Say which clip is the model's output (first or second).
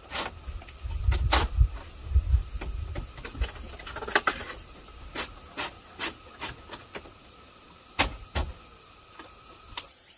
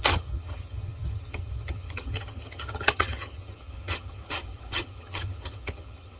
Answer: second